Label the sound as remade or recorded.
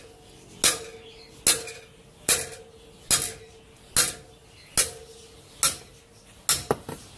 recorded